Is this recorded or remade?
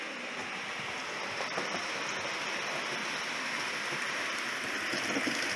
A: recorded